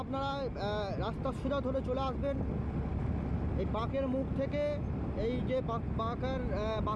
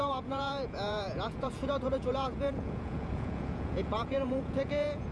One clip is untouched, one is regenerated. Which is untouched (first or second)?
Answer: first